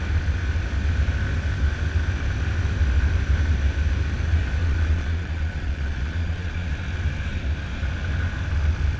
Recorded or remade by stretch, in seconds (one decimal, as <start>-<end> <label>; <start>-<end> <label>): 0.0-4.6 recorded; 4.6-6.7 remade; 6.7-9.0 recorded